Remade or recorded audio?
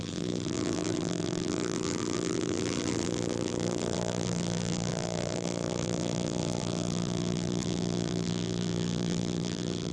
remade